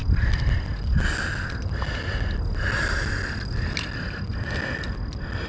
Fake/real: real